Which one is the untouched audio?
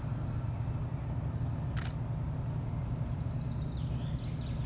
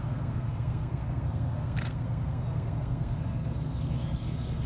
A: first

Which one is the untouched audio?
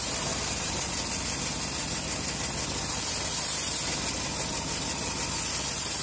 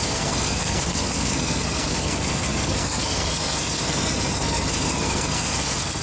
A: first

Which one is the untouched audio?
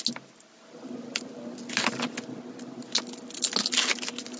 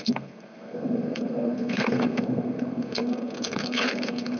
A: first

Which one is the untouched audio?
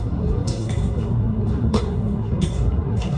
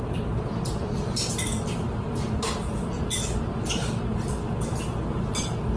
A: second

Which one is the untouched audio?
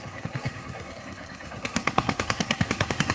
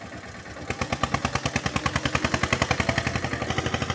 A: second